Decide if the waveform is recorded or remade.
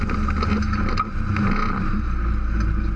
recorded